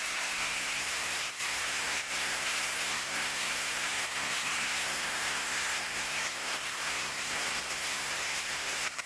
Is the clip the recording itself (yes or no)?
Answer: no